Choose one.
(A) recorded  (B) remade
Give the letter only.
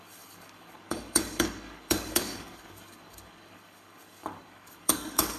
B